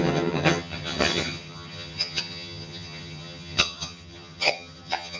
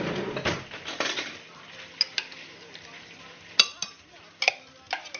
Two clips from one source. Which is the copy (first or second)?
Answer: first